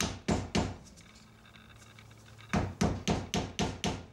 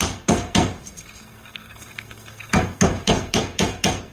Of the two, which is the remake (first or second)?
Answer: second